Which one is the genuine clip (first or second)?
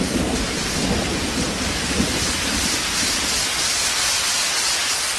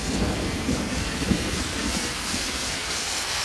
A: first